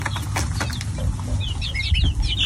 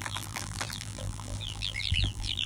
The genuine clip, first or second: first